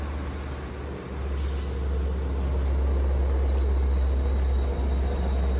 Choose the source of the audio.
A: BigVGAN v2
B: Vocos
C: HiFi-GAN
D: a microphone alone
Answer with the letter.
D